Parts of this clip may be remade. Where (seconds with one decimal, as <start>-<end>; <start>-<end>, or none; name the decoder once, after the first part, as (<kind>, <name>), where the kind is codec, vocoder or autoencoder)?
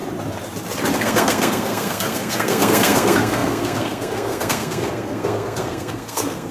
0.9-6.5 (codec, SNAC)